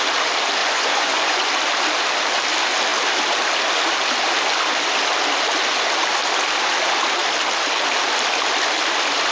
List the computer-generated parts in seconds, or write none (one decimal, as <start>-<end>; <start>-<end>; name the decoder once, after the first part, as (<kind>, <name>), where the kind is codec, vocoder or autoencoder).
0.6-1.5 (vocoder, Vocos)